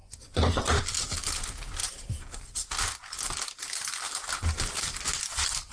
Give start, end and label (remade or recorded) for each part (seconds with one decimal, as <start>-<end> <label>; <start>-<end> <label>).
0.0-0.6 remade; 0.6-5.7 recorded